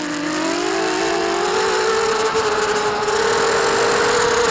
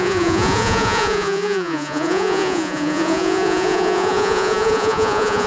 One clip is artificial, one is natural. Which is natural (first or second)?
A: first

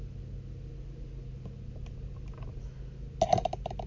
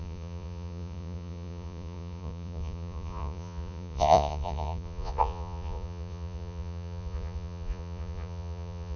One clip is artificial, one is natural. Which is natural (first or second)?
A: first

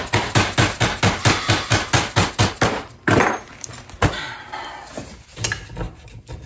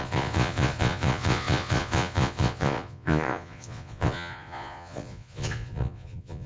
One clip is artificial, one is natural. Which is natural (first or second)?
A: first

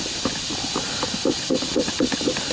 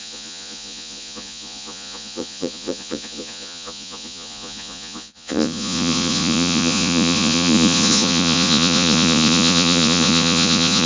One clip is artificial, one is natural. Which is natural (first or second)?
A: first